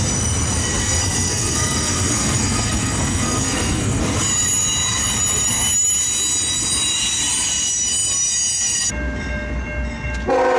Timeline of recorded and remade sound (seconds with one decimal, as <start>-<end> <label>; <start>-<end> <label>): 0.0-0.8 recorded; 0.8-4.0 remade; 4.0-10.6 recorded